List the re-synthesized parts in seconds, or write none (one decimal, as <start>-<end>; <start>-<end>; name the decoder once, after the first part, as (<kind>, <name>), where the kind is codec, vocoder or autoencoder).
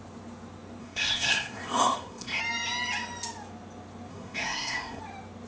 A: 0.8-2.4 (codec, SNAC); 4.1-5.0